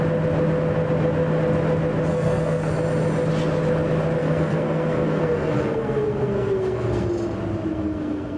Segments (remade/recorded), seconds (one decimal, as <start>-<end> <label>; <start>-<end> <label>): 0.0-2.1 recorded; 2.1-2.7 remade; 2.7-4.2 recorded; 4.2-7.1 remade; 7.1-7.7 recorded; 7.7-8.4 remade